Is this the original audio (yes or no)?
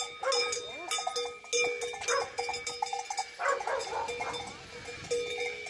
yes